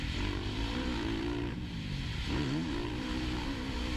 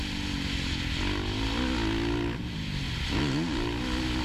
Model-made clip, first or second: first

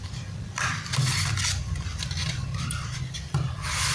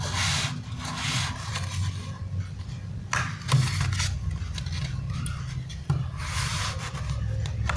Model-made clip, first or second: first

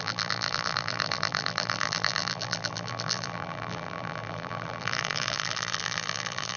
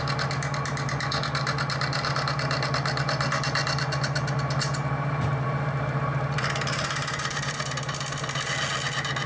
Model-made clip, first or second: first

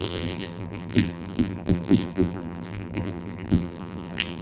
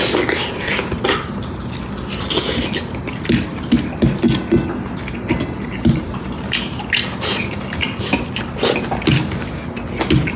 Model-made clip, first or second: first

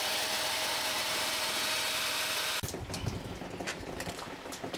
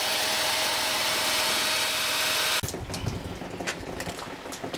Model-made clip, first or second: first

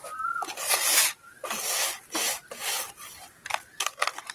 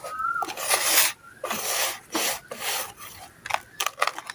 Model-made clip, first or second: first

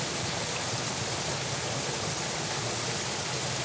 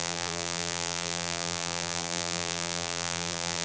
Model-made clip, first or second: second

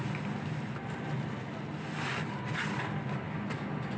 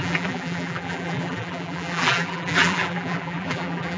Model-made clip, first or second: second